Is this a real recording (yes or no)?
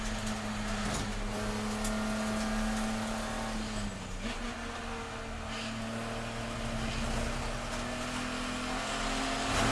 yes